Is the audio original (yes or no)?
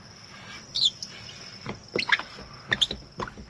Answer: yes